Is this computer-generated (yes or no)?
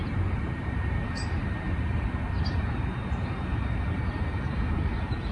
yes